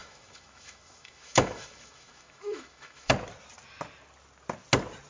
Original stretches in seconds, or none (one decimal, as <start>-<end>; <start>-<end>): 3.1-5.1